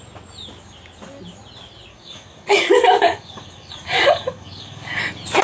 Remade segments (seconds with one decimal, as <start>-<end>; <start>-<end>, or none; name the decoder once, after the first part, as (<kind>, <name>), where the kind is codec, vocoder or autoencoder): 1.9-5.0 (codec, DAC)